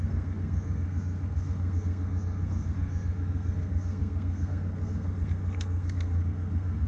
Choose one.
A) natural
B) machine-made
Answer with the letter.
B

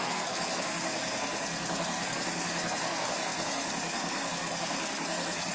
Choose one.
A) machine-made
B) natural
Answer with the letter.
A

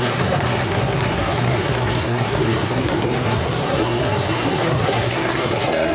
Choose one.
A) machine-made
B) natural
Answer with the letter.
A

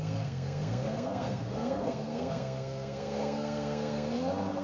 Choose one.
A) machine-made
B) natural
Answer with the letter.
A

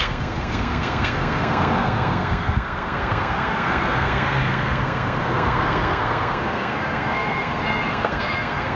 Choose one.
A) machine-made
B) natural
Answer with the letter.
A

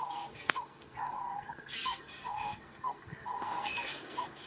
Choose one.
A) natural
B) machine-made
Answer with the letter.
B